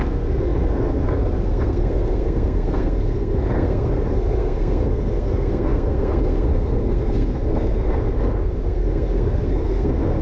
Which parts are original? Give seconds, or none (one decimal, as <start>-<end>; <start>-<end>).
none